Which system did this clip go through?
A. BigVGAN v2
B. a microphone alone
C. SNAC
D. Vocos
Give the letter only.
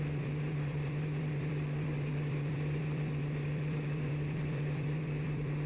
A